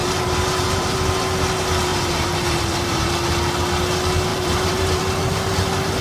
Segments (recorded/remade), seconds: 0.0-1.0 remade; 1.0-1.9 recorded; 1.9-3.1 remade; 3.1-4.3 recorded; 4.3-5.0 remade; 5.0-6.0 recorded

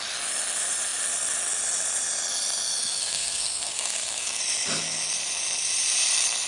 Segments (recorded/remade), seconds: 0.0-2.8 recorded; 2.8-4.4 remade; 4.4-6.5 recorded

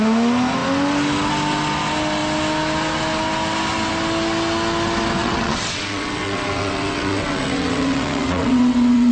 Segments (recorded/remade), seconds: 0.0-5.2 recorded; 5.2-9.1 remade

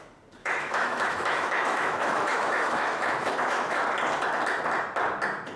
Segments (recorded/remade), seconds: 0.0-0.4 recorded; 0.4-3.8 remade; 3.8-5.6 recorded

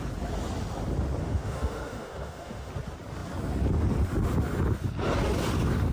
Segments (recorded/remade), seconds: 0.0-1.2 recorded; 1.2-2.7 remade; 2.7-5.9 recorded